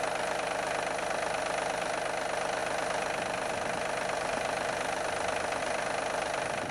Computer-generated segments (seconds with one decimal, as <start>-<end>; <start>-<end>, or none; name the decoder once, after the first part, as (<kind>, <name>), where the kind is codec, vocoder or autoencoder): none